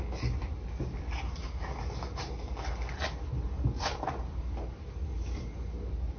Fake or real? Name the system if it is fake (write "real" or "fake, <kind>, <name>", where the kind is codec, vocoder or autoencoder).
real